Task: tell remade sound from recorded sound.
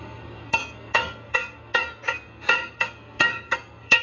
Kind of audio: remade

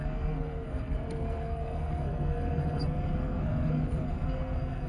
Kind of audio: remade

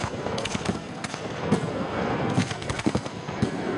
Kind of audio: remade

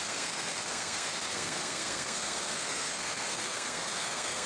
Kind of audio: remade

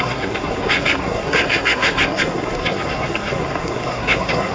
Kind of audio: remade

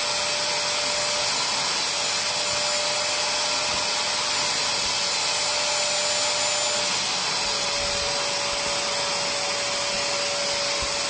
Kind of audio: recorded